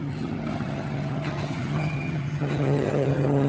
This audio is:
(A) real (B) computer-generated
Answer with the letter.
B